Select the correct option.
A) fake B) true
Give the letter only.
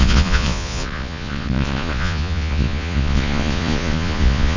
A